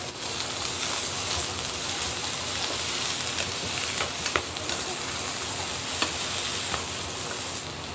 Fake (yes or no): no